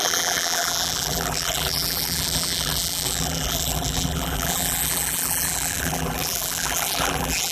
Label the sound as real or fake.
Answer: fake